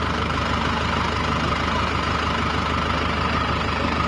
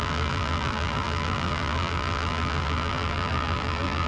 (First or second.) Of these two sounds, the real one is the first